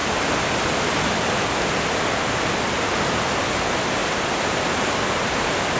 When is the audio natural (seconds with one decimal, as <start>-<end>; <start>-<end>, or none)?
0.0-3.0; 4.0-5.8